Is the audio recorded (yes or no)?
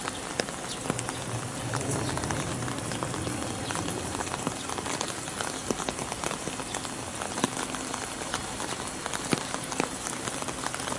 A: yes